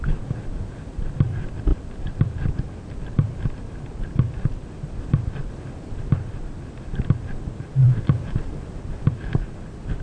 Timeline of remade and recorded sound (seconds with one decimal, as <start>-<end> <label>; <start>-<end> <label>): 0.0-1.7 recorded; 1.7-4.9 remade; 4.9-7.8 recorded; 7.8-8.8 remade; 8.8-10.0 recorded